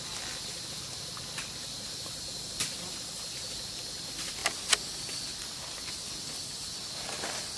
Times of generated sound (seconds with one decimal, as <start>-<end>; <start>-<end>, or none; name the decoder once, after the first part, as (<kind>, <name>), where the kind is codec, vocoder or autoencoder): none